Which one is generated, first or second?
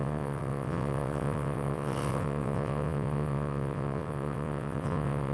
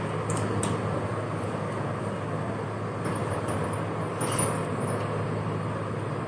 first